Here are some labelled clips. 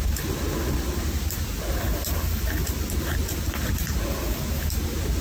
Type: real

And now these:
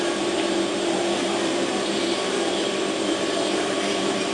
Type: fake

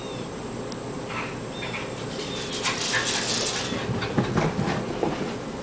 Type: real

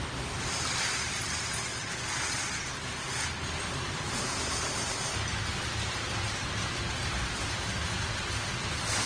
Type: fake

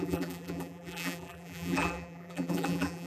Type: fake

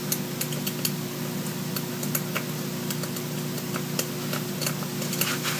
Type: real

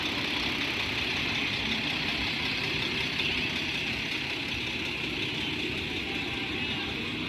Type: real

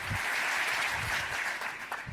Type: fake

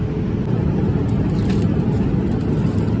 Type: real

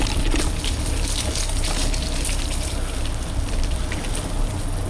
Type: real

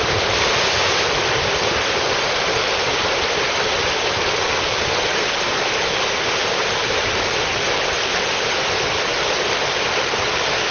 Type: real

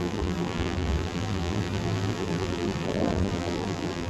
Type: fake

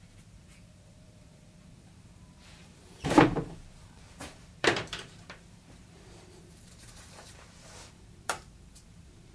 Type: fake